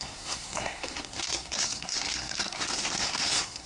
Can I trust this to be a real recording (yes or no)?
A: no